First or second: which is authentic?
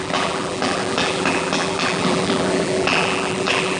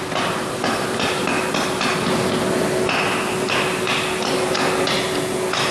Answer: second